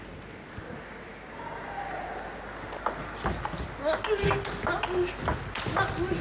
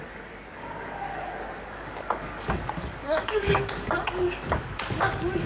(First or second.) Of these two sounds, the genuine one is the first